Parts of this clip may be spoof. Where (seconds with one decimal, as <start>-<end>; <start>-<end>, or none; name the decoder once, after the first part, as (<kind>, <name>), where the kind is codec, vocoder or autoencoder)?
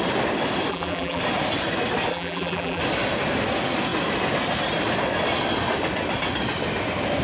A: 0.7-1.2 (vocoder, BigVGAN v2); 2.1-2.8